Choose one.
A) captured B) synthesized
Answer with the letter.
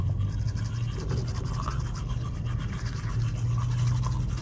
A